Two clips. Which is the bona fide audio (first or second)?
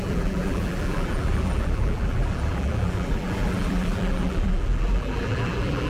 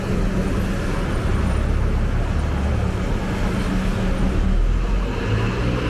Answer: second